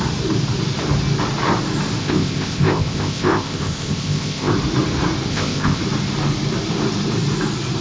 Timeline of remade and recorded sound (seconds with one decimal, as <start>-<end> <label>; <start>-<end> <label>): 0.0-2.0 recorded; 2.0-4.5 remade; 4.5-5.3 recorded; 5.3-5.8 remade; 5.8-7.8 recorded